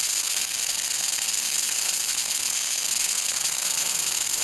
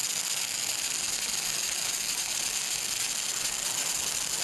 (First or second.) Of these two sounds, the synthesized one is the first